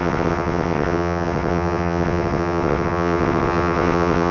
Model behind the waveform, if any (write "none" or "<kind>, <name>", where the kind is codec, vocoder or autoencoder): vocoder, WaveNeXt